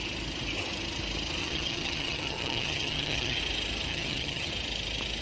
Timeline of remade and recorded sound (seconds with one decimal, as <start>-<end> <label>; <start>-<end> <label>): 0.0-1.4 recorded; 1.4-3.4 remade; 3.4-3.9 recorded; 3.9-4.5 remade; 4.5-5.2 recorded

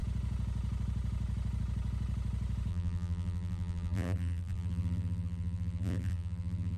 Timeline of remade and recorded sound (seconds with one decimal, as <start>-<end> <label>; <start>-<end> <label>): 0.0-2.7 recorded; 2.7-6.8 remade